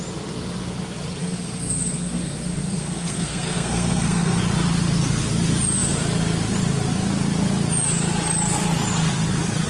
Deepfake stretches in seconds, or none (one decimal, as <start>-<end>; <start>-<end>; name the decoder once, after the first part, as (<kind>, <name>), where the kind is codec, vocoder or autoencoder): 1.2-4.4 (codec, SNAC)